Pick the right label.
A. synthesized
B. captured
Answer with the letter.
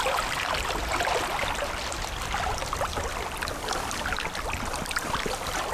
B